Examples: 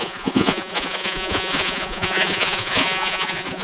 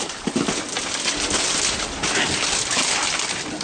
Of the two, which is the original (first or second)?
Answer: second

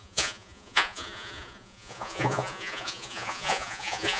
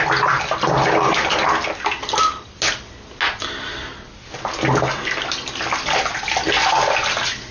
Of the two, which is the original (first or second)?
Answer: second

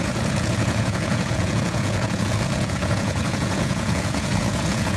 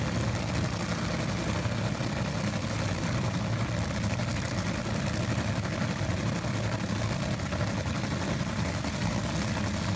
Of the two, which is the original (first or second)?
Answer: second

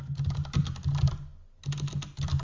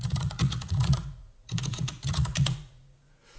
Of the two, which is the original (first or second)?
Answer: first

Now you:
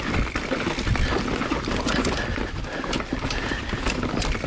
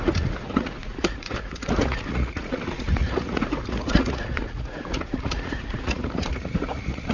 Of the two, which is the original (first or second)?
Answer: first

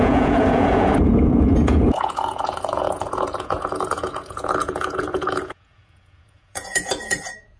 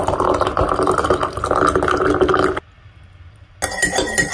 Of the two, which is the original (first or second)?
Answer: second